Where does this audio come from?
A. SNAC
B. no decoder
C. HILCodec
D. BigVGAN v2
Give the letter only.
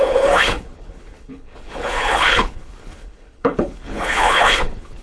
C